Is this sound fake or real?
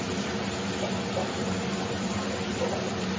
real